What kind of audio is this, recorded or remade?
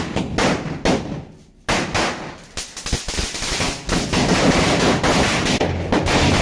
recorded